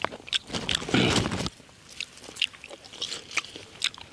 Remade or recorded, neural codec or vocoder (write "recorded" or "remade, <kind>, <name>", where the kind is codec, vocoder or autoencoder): recorded